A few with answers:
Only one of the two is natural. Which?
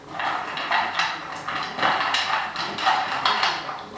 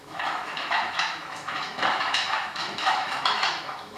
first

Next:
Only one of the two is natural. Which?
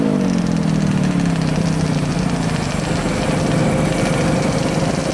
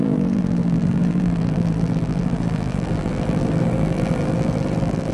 first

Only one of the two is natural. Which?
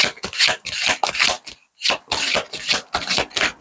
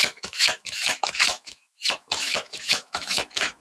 first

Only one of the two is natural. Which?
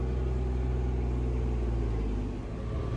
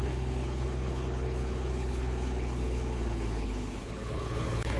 first